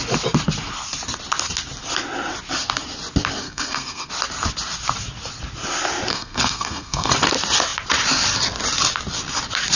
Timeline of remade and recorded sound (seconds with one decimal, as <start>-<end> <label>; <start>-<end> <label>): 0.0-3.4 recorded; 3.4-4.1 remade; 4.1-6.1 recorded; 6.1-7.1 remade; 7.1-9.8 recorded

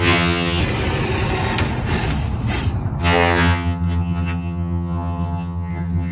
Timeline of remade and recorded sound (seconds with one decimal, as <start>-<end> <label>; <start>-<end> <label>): 0.0-0.6 remade; 0.6-3.0 recorded; 3.0-6.1 remade

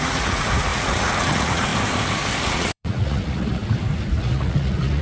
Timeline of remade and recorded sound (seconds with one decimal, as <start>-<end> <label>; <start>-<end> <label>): 0.0-1.7 remade; 1.7-2.4 recorded; 2.4-3.6 remade; 3.6-4.2 recorded; 4.2-5.0 remade

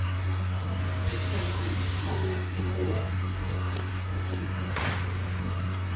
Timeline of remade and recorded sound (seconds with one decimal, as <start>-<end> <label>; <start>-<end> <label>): 0.0-0.8 remade; 0.8-2.0 recorded; 2.0-4.9 remade; 4.9-5.4 recorded; 5.4-6.0 remade

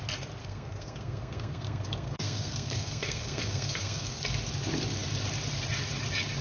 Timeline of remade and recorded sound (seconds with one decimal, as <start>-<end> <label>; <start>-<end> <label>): 0.0-0.4 recorded; 0.4-4.2 remade; 4.2-6.4 recorded

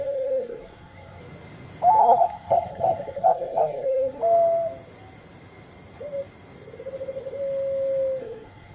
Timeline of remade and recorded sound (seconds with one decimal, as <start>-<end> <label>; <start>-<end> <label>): 0.0-1.2 remade; 1.2-2.0 recorded; 2.0-4.2 remade; 4.2-8.2 recorded; 8.2-8.7 remade

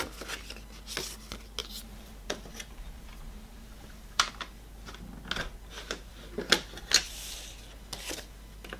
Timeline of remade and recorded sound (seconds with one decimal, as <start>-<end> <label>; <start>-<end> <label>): 0.0-1.6 recorded; 1.6-4.3 remade; 4.3-8.8 recorded